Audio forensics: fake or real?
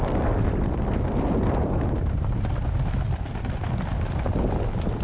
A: real